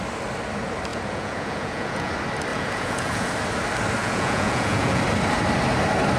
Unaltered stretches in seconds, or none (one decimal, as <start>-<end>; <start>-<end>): 0.0-0.9; 2.1-2.5; 3.3-4.0; 5.0-6.2

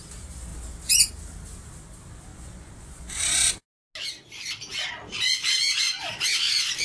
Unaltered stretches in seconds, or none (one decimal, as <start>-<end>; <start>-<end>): 0.0-2.3; 3.5-6.8